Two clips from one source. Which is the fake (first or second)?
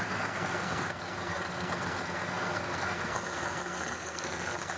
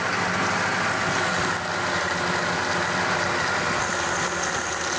first